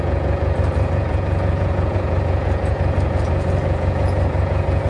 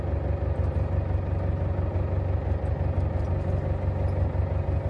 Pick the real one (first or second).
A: second